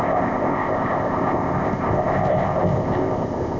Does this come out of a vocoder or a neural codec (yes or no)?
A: yes